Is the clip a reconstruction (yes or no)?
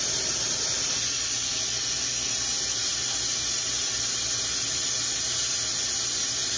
no